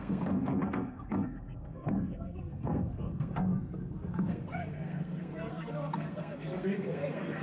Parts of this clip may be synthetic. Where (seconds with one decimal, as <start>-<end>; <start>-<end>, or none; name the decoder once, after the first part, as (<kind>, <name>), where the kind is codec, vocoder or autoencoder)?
0.0-7.4 (codec, SNAC)